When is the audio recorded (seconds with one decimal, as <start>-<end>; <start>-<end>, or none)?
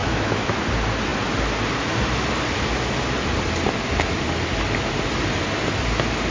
0.6-6.3